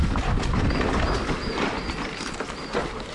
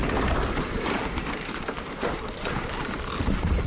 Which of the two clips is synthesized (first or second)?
second